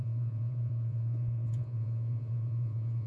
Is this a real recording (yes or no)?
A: no